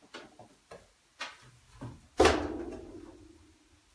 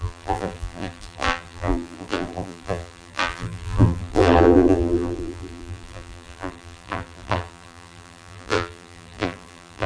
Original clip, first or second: first